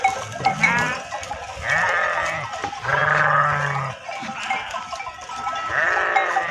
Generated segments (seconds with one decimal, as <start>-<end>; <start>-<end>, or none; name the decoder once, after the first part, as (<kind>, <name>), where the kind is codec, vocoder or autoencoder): none